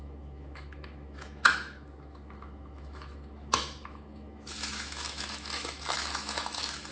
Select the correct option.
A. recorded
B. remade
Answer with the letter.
B